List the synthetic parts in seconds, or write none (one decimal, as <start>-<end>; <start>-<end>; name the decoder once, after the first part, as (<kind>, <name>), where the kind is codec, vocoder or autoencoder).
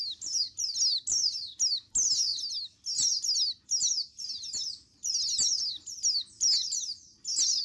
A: none